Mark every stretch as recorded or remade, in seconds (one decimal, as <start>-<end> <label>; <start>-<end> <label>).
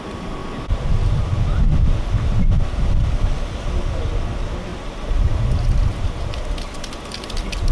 0.0-4.7 recorded; 4.7-5.7 remade; 5.7-7.7 recorded